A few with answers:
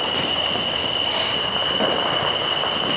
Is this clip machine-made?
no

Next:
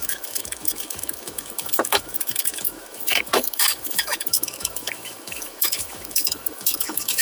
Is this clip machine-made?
yes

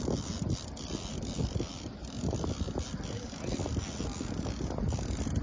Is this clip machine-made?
no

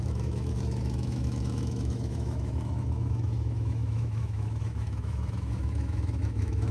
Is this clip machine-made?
yes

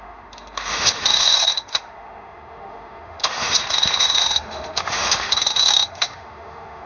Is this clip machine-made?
yes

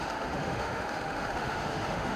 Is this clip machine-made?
yes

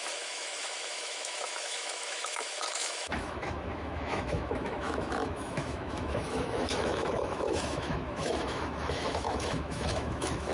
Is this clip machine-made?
yes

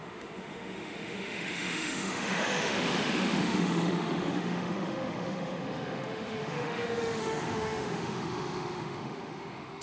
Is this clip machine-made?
yes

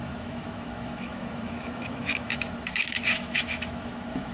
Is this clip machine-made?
yes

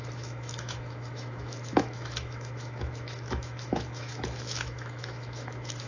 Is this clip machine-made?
yes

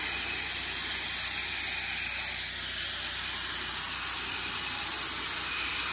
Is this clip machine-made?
no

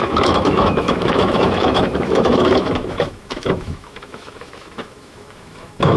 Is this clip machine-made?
yes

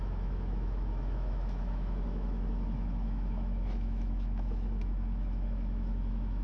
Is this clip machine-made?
yes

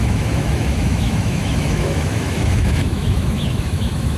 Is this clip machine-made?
yes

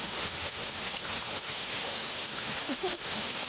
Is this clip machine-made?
yes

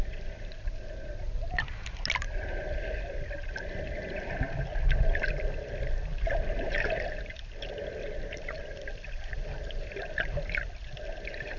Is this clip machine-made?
no